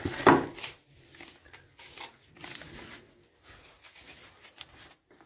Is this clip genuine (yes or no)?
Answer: yes